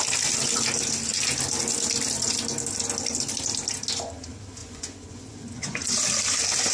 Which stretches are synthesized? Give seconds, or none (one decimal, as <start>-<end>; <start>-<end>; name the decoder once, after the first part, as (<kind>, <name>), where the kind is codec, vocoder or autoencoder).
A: 4.6-5.8 (vocoder, Vocos)